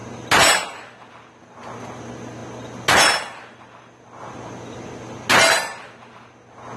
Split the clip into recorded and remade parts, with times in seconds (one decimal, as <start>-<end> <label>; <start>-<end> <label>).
0.0-6.8 recorded